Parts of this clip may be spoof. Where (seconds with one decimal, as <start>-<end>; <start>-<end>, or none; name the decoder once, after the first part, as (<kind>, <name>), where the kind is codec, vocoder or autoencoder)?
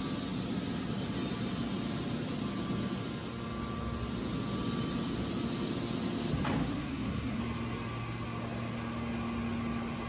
6.6-7.4 (codec, SNAC)